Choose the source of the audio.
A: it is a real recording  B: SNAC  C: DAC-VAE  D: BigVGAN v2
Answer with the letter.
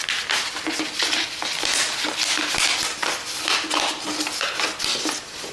A